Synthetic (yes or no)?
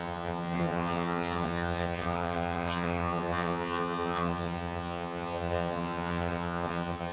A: yes